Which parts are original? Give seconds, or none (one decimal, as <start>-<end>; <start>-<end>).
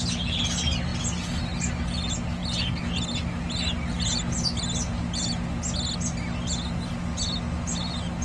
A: 0.0-8.2